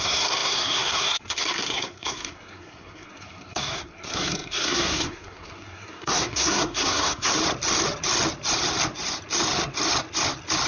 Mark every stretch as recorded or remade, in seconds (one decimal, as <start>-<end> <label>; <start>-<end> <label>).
0.0-7.3 remade; 7.3-10.7 recorded